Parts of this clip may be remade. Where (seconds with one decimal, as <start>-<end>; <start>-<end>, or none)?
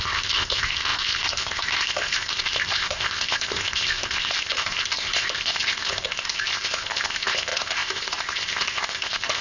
0.0-9.4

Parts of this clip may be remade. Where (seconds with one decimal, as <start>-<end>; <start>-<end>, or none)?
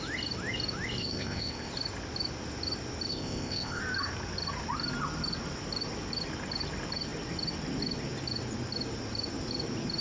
1.0-1.7; 3.1-3.8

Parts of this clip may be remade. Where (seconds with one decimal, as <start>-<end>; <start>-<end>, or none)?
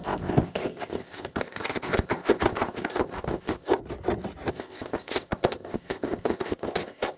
0.0-3.8; 4.5-7.2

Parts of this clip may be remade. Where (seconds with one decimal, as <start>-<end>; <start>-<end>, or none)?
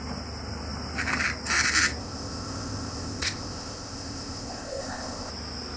2.0-5.3